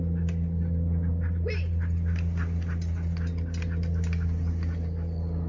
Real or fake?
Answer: real